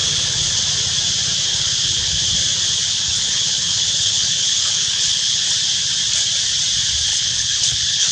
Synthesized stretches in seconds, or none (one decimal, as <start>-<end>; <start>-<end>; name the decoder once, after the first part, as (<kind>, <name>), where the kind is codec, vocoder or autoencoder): 0.0-0.6 (codec, HILCodec); 1.5-2.2; 2.8-5.4; 7.1-8.1

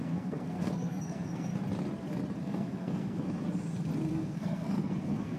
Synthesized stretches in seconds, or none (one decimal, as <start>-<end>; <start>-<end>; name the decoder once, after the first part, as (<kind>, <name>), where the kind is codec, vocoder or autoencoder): 0.0-1.5 (codec, SNAC); 2.4-3.4; 4.1-5.4

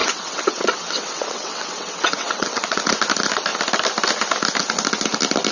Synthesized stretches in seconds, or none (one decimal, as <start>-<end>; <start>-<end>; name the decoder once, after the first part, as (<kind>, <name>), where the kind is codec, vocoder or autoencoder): 0.0-2.8 (vocoder, WaveNeXt)

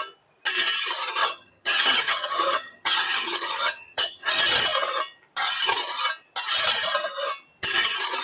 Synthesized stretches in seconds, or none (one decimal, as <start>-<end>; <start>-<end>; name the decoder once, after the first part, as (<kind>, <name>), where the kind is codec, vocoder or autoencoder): 1.2-4.3 (vocoder, HiFi-GAN)

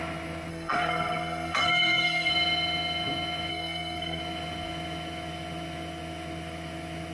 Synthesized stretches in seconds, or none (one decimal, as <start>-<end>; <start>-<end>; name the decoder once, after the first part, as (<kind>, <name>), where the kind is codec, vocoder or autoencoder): 0.5-2.3 (codec, SNAC); 3.5-4.2

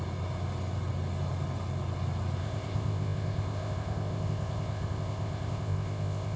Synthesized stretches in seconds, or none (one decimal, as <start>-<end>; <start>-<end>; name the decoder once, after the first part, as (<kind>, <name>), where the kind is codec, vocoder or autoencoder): 2.4-6.4 (codec, ZipCodec)